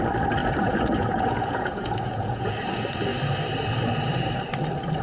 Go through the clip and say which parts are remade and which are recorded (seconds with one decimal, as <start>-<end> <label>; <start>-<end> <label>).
0.0-0.4 recorded; 0.4-2.6 remade; 2.6-5.0 recorded